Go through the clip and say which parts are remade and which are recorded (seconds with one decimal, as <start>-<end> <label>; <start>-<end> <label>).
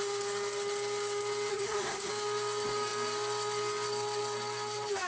0.0-1.5 recorded; 1.5-2.1 remade; 2.1-5.1 recorded